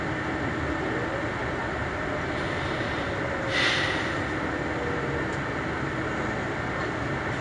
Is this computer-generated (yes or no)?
no